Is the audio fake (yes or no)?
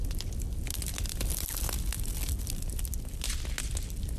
no